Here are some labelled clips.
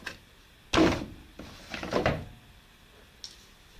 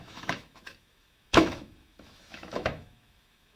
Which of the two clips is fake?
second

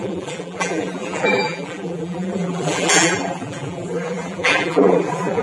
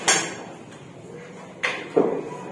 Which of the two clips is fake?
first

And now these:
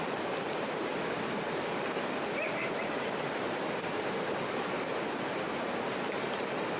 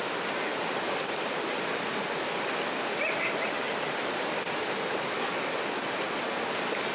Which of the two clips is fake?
first